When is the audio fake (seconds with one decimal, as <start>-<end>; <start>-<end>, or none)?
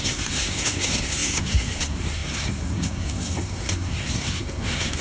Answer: 0.0-5.0